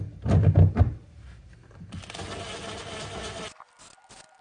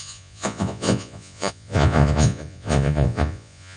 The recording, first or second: first